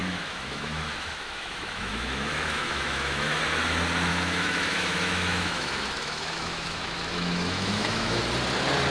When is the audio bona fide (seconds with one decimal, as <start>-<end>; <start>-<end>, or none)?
3.4-4.1; 8.2-8.9